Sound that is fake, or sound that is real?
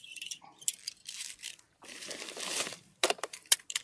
fake